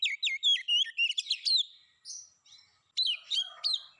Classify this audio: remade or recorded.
recorded